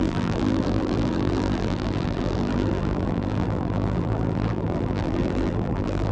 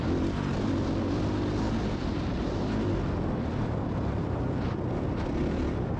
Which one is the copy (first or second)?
first